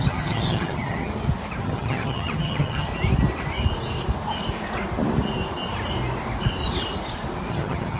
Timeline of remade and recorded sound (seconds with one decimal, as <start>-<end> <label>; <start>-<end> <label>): 0.0-1.1 remade; 1.1-1.6 recorded; 1.6-2.9 remade; 2.9-7.5 recorded; 7.5-8.0 remade